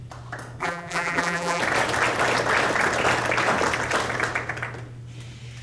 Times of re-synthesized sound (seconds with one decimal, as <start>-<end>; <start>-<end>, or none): 0.6-1.6